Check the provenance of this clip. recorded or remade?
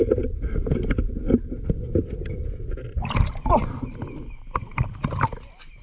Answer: recorded